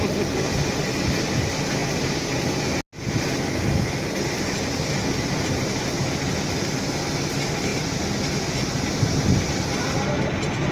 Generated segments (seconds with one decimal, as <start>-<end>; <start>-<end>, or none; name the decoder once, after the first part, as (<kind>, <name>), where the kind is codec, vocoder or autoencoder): none